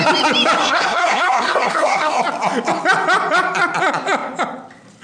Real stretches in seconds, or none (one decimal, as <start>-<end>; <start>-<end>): 0.0-0.6; 2.2-5.0

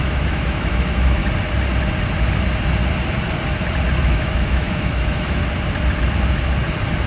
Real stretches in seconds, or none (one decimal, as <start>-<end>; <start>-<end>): 1.2-4.0; 5.4-7.1

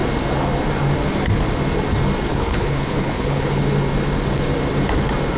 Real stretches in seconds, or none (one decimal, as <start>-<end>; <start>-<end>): 0.0-2.3; 3.6-5.4

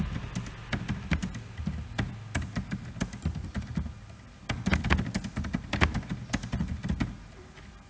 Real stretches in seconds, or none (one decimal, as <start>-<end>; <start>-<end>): 0.0-7.9

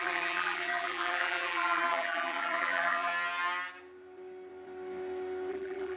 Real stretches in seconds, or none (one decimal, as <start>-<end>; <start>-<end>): 3.1-5.5